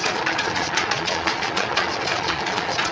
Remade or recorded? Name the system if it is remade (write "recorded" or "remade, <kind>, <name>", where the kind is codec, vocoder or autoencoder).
remade, vocoder, Vocos